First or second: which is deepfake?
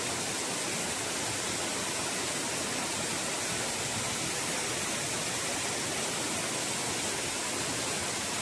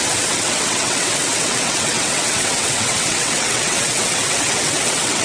second